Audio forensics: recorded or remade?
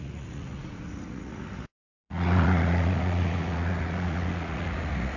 remade